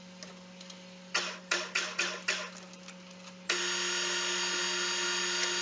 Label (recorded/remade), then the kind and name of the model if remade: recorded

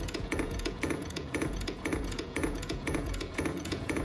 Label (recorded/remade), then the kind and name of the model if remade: remade, vocoder, Vocos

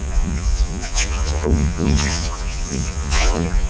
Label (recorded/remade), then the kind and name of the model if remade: remade, vocoder, Vocos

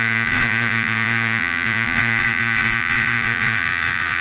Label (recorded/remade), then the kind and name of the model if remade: remade, vocoder, Vocos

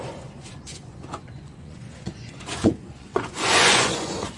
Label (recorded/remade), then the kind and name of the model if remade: remade, vocoder, Vocos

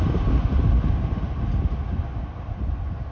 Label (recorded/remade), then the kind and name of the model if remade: recorded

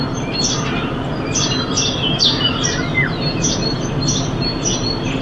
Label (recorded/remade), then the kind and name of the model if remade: recorded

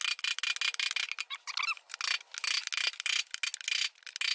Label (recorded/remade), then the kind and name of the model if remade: recorded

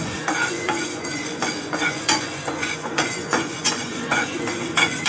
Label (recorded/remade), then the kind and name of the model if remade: remade, vocoder, Vocos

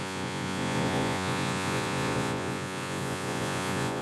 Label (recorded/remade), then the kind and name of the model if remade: remade, vocoder, Vocos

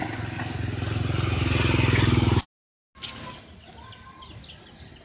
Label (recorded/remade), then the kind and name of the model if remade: recorded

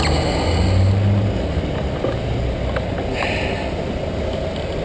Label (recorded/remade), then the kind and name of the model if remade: recorded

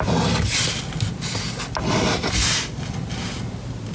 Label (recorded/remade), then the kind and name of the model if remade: recorded